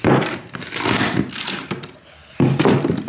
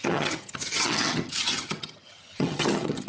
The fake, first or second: second